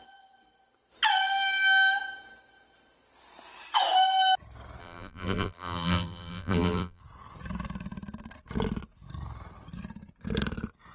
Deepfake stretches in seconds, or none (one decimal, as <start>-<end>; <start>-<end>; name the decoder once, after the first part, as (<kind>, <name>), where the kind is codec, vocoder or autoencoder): 4.8-7.0 (vocoder, BigVGAN v2)